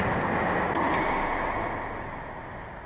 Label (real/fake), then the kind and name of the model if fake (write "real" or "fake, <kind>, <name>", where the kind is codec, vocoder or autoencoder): real